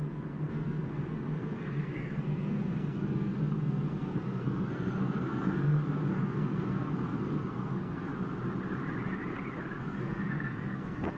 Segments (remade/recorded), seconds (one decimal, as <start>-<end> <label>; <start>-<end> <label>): 0.0-8.1 remade; 8.1-9.8 recorded; 9.8-11.2 remade